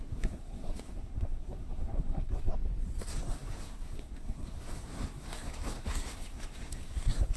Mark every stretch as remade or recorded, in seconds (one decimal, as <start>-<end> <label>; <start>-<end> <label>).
0.0-2.5 remade; 2.5-3.0 recorded; 3.0-7.4 remade